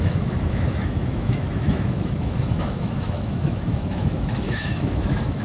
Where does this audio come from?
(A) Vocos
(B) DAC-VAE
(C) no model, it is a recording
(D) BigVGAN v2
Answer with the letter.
B